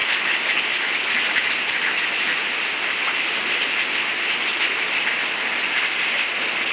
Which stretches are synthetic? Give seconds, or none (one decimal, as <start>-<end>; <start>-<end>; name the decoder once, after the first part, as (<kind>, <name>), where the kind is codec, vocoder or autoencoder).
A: none